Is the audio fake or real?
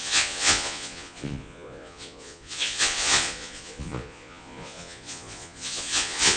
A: fake